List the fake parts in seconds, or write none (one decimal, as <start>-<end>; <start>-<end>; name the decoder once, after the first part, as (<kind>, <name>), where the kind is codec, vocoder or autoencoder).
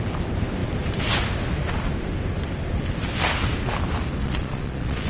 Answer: 4.2-5.1 (vocoder, Vocos)